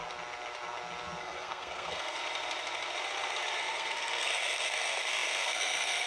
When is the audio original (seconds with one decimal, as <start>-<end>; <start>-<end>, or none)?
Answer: 0.0-1.2; 2.2-3.6